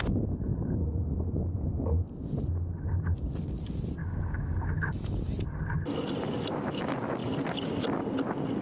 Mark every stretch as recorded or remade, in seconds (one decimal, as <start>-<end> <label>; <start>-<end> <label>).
0.0-4.0 recorded; 4.0-5.2 remade; 5.2-8.6 recorded